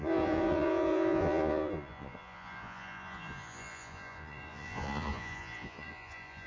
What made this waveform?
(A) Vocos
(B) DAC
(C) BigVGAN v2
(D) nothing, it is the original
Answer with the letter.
A